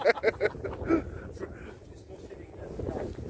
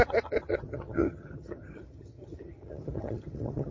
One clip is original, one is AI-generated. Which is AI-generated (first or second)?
second